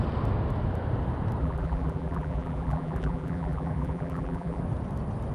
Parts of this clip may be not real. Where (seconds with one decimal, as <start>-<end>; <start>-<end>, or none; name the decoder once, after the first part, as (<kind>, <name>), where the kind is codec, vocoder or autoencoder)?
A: 1.4-4.6 (vocoder, BigVGAN v2)